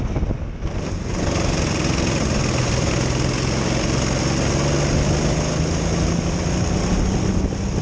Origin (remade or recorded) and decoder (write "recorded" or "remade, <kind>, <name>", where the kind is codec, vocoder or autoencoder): recorded